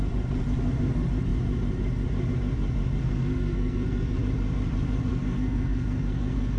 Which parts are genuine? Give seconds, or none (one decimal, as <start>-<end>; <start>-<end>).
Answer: 0.0-3.0; 4.2-5.1